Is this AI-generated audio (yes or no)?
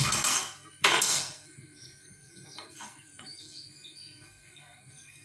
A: yes